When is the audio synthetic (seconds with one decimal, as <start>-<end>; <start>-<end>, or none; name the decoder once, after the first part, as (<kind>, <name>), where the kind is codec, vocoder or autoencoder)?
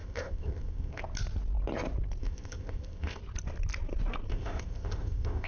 0.0-1.0 (codec, ZipCodec); 2.2-3.2; 4.3-5.5